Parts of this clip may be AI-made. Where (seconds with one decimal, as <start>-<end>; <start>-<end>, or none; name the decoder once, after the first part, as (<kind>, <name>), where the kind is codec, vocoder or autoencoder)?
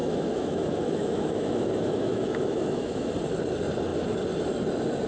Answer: 0.0-3.1 (autoencoder, DAC-VAE)